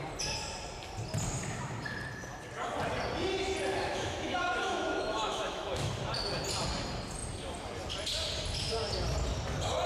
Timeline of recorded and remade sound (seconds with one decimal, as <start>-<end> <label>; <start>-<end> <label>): 0.0-3.7 recorded; 3.7-5.9 remade; 5.9-9.9 recorded